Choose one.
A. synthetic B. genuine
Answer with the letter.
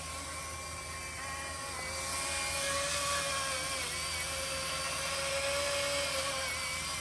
B